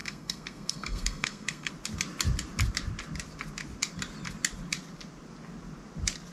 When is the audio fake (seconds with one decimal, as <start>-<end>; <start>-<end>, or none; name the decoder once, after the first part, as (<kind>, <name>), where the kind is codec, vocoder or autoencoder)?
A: 0.0-1.7 (codec, SNAC)

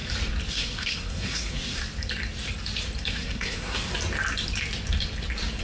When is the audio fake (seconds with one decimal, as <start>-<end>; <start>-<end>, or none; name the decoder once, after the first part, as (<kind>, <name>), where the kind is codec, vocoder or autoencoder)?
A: 0.5-1.8 (codec, SNAC); 3.1-3.9

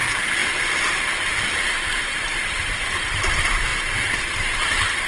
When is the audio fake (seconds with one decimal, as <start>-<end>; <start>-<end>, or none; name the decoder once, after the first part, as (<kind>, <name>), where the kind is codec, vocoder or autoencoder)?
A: 0.0-3.7 (vocoder, BigVGAN v2); 4.2-5.1